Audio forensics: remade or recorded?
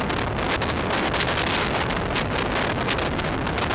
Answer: recorded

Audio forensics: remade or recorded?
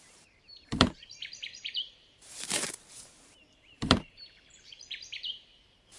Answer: remade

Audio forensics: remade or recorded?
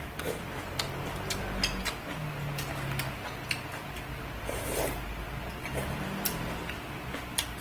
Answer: recorded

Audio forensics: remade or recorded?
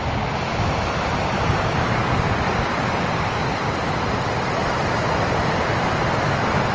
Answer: recorded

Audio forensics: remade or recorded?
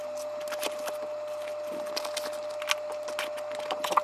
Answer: recorded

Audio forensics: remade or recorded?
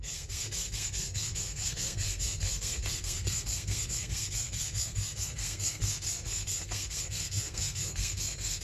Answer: remade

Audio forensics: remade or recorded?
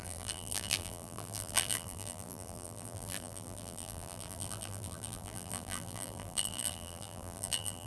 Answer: remade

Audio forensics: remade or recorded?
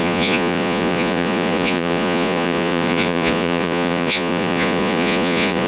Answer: remade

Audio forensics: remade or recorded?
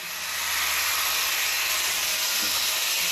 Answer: recorded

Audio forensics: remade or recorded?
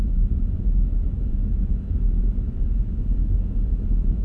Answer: recorded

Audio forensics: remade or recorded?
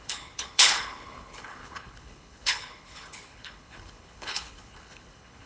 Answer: remade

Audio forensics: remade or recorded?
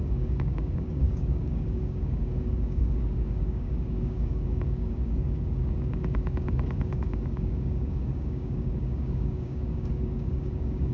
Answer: remade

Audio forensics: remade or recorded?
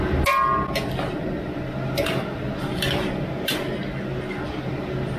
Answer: recorded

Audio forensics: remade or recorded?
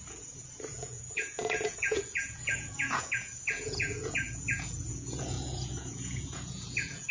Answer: remade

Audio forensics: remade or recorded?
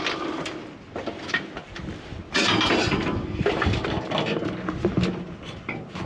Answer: recorded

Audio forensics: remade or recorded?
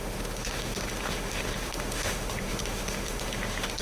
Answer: remade